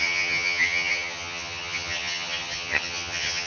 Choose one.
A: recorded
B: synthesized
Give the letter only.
B